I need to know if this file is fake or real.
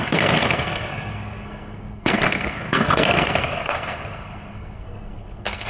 fake